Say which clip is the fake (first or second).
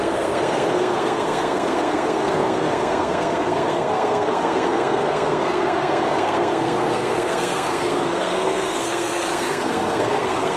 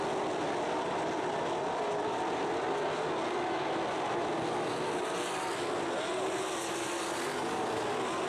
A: first